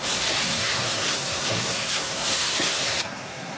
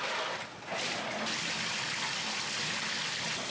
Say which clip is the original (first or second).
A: second